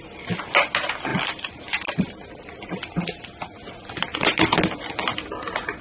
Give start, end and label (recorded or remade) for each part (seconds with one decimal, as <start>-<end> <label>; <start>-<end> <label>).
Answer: 0.0-1.1 recorded; 1.1-1.9 remade; 1.9-3.8 recorded; 3.8-5.3 remade; 5.3-5.8 recorded